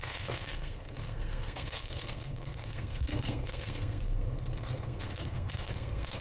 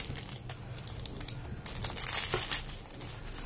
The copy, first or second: first